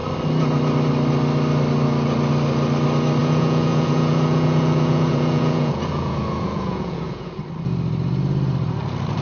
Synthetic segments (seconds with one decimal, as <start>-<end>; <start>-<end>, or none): 3.2-7.4